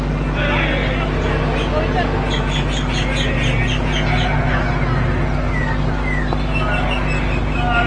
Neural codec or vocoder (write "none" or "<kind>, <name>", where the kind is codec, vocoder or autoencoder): none